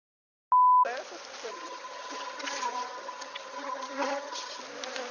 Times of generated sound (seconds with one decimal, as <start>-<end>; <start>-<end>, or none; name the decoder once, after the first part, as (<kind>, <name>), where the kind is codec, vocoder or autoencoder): 1.5-4.6 (vocoder, HiFi-GAN)